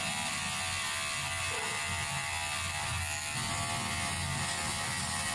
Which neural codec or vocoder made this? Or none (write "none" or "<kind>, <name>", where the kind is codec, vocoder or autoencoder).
none